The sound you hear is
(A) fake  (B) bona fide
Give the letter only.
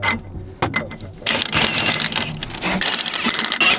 B